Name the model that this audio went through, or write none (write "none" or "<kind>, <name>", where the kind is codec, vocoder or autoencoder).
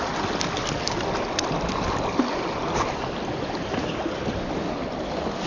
none